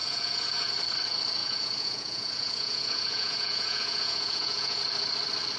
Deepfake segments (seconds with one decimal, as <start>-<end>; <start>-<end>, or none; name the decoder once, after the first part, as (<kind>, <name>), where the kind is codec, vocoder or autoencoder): 0.0-0.7 (vocoder, Vocos); 1.4-4.8

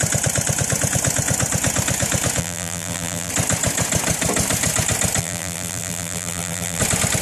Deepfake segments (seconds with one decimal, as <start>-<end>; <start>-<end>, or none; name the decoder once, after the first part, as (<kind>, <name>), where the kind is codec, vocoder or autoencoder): 2.4-3.3 (vocoder, BigVGAN v2); 5.2-6.8

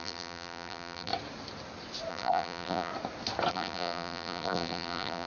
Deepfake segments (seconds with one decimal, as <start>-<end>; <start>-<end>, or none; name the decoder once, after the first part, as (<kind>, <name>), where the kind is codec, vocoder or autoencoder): 0.0-1.1 (vocoder, BigVGAN v2); 2.1-2.9; 3.5-5.3

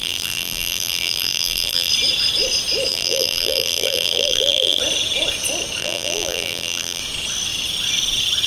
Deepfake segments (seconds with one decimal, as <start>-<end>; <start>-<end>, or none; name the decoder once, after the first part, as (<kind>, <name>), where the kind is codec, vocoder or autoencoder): 0.0-1.9 (vocoder, BigVGAN v2); 2.9-4.8; 5.8-7.0

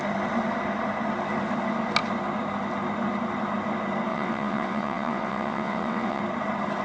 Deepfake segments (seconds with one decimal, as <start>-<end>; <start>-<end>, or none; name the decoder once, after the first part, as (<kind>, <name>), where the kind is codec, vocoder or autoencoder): 4.1-6.2 (vocoder, WaveNeXt)

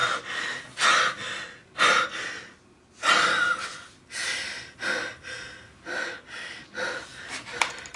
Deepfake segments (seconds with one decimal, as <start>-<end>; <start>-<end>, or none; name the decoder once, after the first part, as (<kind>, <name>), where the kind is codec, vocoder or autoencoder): 0.0-2.0 (vocoder, BigVGAN v2); 7.1-8.0

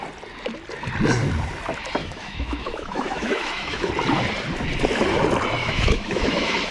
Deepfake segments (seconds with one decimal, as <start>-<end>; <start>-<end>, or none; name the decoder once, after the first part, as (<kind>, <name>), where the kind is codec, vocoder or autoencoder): 2.0-3.9 (autoencoder, DAC-VAE); 5.6-6.7

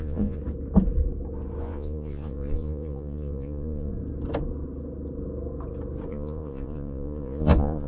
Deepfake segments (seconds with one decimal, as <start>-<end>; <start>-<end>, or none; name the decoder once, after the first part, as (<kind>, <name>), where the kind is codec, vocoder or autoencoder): 0.0-0.4 (vocoder, Vocos); 1.6-3.9; 6.1-7.9